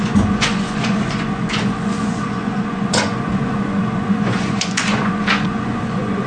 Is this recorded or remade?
remade